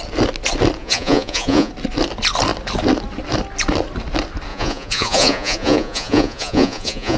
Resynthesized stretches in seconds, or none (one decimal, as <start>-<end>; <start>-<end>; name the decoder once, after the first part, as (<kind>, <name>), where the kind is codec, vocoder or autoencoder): 0.8-1.7 (vocoder, Vocos); 4.5-7.2